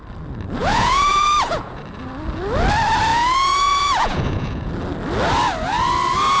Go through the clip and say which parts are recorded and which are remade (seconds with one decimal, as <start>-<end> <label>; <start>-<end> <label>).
0.0-0.6 recorded; 0.6-1.8 remade; 1.8-3.1 recorded; 3.1-4.7 remade; 4.7-6.4 recorded